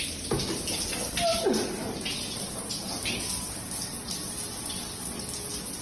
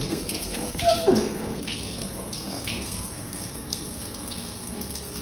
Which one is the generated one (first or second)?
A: second